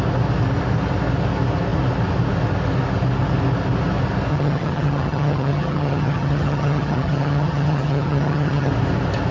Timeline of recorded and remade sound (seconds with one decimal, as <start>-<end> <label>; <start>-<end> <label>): 0.0-4.3 recorded; 4.3-8.7 remade; 8.7-9.3 recorded